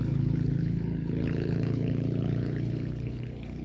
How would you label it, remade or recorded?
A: remade